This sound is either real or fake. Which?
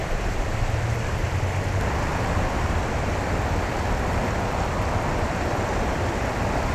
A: fake